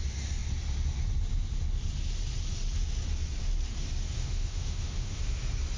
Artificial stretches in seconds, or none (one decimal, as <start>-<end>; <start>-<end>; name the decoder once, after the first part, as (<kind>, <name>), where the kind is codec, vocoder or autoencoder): 4.2-5.2 (autoencoder, DAC-VAE)